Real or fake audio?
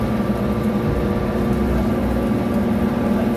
real